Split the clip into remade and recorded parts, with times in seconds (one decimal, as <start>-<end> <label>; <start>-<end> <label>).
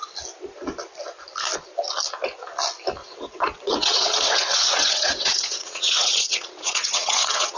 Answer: 0.0-3.0 recorded; 3.0-7.6 remade